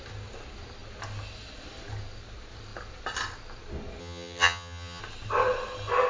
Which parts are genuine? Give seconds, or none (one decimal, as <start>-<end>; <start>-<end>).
0.0-4.0; 5.0-6.1